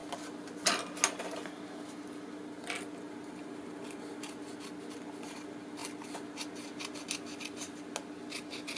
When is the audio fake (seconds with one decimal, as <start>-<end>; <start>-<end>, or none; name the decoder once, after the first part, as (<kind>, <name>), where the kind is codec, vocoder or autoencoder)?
none